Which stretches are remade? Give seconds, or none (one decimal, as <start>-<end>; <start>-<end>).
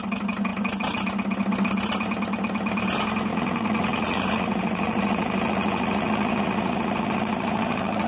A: 3.3-8.1